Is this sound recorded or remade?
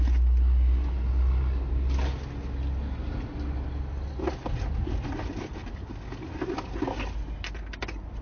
recorded